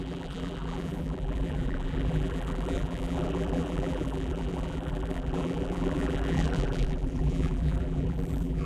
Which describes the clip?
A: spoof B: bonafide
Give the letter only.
A